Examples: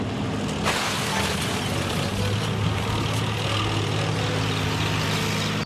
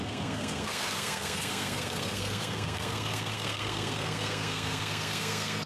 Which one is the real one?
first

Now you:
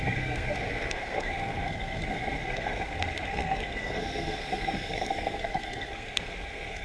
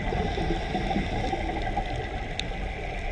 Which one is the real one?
second